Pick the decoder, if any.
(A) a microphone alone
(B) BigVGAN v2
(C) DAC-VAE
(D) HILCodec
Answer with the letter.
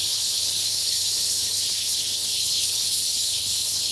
D